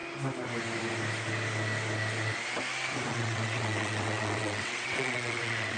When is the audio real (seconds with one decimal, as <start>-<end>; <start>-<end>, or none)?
0.0-3.1